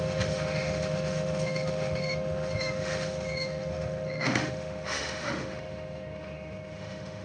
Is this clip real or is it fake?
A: fake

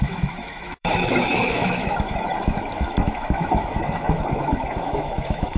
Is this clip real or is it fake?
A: fake